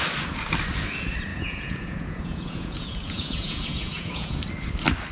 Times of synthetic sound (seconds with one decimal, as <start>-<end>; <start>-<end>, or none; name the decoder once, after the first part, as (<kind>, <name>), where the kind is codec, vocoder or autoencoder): 1.3-4.4 (vocoder, Vocos)